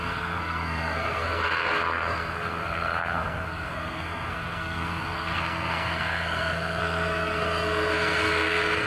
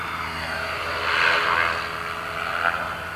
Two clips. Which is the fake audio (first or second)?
first